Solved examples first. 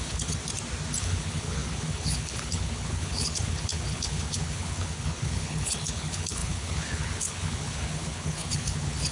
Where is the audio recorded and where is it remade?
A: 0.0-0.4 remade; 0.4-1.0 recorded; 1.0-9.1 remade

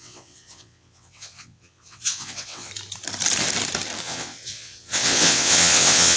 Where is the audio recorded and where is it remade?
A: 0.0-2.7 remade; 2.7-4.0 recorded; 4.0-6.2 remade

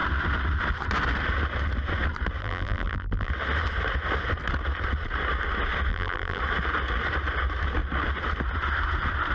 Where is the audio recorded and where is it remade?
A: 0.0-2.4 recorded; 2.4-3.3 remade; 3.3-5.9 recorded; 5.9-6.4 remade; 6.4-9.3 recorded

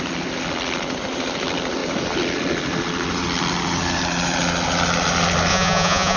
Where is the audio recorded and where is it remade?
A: 0.0-5.5 recorded; 5.5-6.2 remade

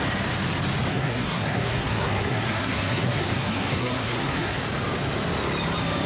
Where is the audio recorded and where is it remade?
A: 0.0-0.9 recorded; 0.9-4.6 remade; 4.6-6.1 recorded

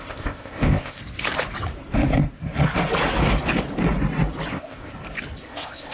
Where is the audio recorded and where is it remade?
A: 0.0-1.0 remade; 1.0-4.5 recorded; 4.5-4.9 remade; 4.9-5.4 recorded; 5.4-5.9 remade

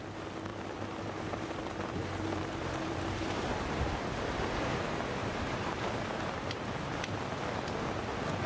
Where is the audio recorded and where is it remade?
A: 0.0-0.5 recorded; 0.5-4.5 remade; 4.5-5.2 recorded; 5.2-6.6 remade; 6.6-8.5 recorded